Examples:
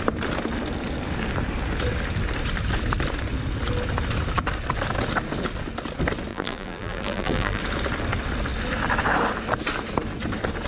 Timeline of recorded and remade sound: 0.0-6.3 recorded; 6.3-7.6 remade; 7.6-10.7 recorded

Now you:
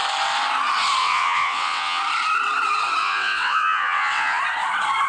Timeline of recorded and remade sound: 0.0-1.0 recorded; 1.0-2.0 remade; 2.0-3.0 recorded; 3.0-4.4 remade; 4.4-5.1 recorded

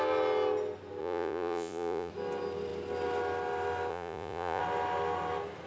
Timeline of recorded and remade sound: 0.0-1.0 recorded; 1.0-2.1 remade; 2.1-3.9 recorded; 3.9-4.6 remade; 4.6-5.7 recorded

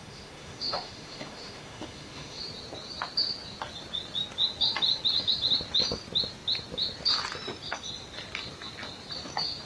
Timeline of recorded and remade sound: 0.0-2.4 remade; 2.4-9.7 recorded

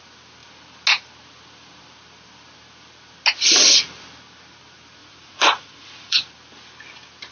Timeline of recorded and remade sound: 0.0-5.0 recorded; 5.0-6.3 remade; 6.3-7.3 recorded

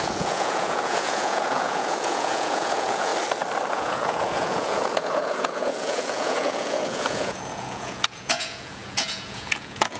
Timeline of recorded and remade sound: 0.0-3.1 remade; 3.1-3.7 recorded; 3.7-10.0 remade

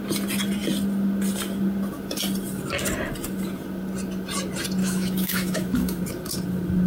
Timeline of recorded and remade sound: 0.0-4.8 recorded; 4.8-6.0 remade; 6.0-6.9 recorded

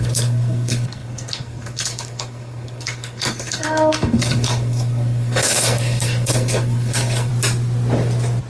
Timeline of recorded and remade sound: 0.0-7.3 remade; 7.3-8.5 recorded